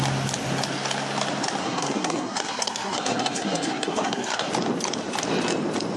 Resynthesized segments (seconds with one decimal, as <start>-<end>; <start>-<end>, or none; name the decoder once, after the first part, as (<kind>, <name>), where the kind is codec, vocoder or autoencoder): 1.6-4.5 (codec, SNAC)